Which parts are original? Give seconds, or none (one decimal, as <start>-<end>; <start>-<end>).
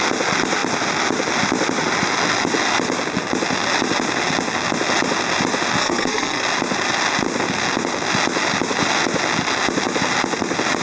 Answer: 0.0-5.8; 6.4-10.8